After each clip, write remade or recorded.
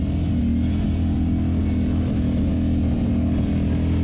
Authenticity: recorded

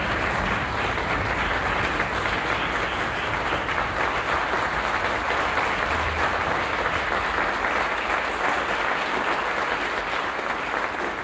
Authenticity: recorded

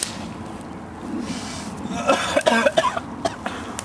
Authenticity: recorded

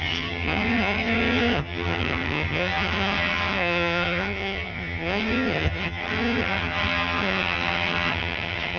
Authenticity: remade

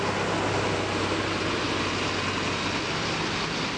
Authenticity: recorded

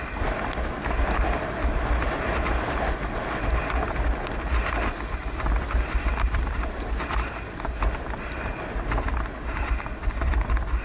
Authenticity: recorded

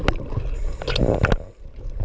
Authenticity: recorded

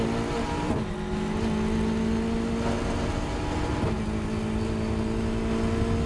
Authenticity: recorded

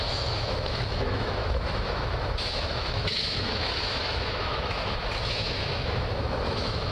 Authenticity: remade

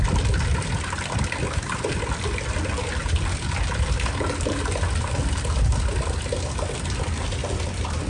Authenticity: recorded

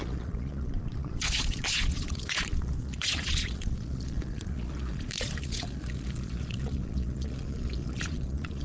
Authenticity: remade